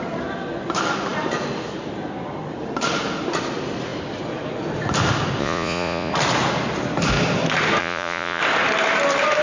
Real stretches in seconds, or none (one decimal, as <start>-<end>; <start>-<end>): 0.0-5.4; 6.1-7.8; 8.4-9.4